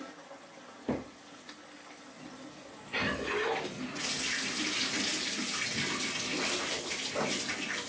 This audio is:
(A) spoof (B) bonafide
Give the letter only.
B